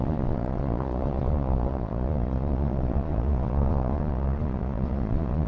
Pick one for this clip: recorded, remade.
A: remade